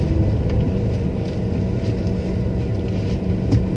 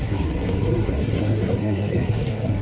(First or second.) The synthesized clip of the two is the second